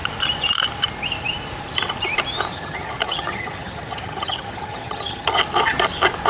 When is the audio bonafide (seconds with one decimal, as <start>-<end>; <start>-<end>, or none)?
0.0-2.5; 5.4-6.3